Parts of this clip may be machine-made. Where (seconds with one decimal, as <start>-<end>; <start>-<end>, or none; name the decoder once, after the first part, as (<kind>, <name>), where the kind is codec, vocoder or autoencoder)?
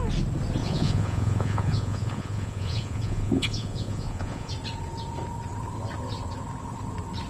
0.6-4.5 (vocoder, Vocos)